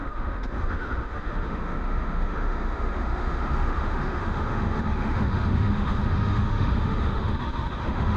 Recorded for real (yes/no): no